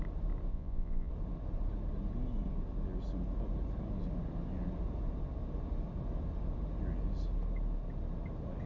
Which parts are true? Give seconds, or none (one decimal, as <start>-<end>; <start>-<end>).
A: 0.0-0.5; 1.1-8.7